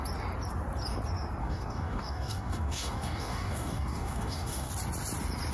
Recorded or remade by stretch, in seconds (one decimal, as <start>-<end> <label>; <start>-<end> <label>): 0.0-1.4 recorded; 1.4-4.7 remade; 4.7-5.5 recorded